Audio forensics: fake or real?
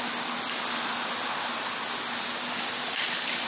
real